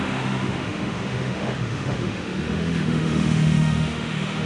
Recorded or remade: remade